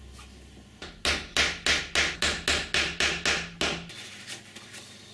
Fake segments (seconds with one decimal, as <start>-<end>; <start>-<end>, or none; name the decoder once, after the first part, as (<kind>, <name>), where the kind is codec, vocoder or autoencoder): none